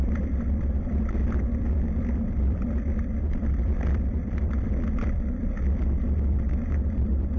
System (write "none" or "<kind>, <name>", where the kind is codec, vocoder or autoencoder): vocoder, BigVGAN v2